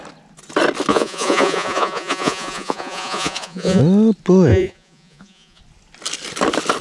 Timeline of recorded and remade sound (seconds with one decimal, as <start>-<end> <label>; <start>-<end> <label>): 0.0-0.9 recorded; 0.9-3.8 remade; 3.8-4.5 recorded; 4.5-5.6 remade; 5.6-6.8 recorded